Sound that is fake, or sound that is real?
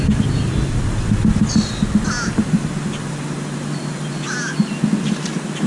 real